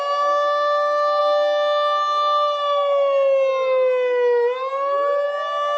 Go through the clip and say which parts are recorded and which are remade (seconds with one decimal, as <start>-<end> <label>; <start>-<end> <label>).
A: 0.0-5.8 recorded